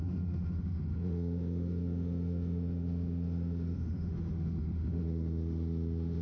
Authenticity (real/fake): fake